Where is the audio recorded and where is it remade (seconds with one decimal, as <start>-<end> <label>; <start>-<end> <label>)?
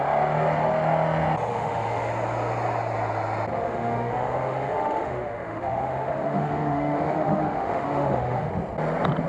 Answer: 0.0-1.5 recorded; 1.5-2.1 remade; 2.1-3.5 recorded; 3.5-8.5 remade; 8.5-9.3 recorded